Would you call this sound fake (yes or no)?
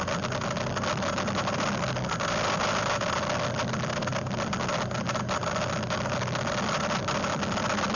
no